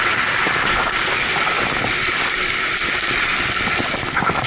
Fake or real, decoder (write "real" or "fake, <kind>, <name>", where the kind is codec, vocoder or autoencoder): real